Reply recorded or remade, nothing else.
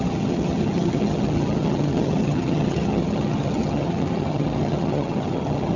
remade